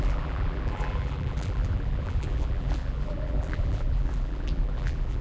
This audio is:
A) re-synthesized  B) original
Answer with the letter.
A